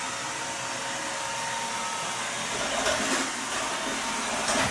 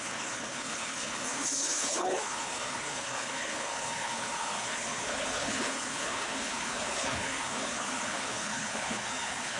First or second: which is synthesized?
second